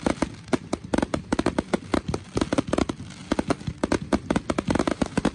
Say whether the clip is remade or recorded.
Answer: recorded